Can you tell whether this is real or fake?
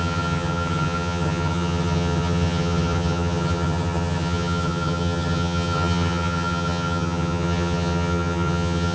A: fake